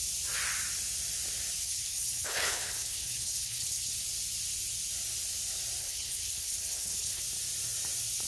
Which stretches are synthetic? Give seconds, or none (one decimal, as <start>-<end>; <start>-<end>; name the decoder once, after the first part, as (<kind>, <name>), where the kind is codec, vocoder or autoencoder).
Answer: 1.6-3.9 (codec, HILCodec); 5.8-7.2